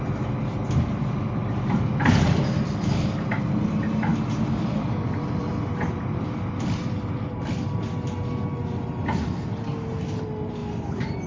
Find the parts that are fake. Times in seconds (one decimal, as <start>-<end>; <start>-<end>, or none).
none